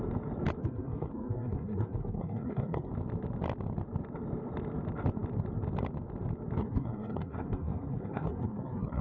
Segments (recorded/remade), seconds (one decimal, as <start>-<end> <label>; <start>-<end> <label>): 0.0-0.6 recorded; 0.6-2.9 remade; 2.9-6.6 recorded; 6.6-9.0 remade